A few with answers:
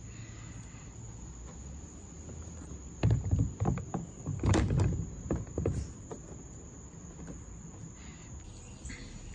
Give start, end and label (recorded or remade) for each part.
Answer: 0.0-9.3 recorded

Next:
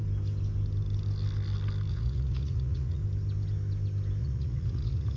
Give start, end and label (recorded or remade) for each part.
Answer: 0.0-1.9 recorded; 1.9-3.0 remade; 3.0-4.2 recorded; 4.2-5.2 remade

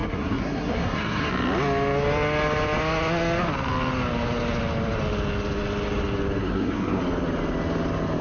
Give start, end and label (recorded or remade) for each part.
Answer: 0.0-1.3 remade; 1.3-6.4 recorded; 6.4-7.0 remade; 7.0-8.2 recorded

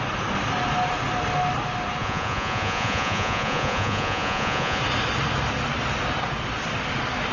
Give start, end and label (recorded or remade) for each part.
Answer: 0.0-2.0 recorded; 2.0-4.8 remade; 4.8-7.3 recorded

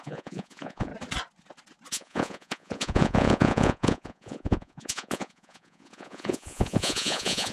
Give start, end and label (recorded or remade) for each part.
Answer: 0.0-0.9 remade; 0.9-1.9 recorded; 1.9-7.5 remade